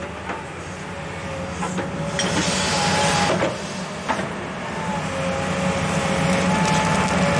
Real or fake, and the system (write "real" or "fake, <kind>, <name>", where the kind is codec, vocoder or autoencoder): real